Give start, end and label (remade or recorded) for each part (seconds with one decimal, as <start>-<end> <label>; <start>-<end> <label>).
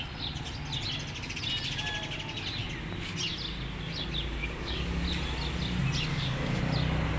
0.0-4.4 recorded; 4.4-5.0 remade; 5.0-6.1 recorded; 6.1-6.6 remade; 6.6-7.2 recorded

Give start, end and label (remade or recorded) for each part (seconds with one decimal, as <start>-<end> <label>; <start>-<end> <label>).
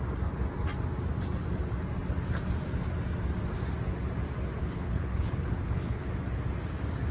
0.0-4.6 recorded; 4.6-6.1 remade; 6.1-7.1 recorded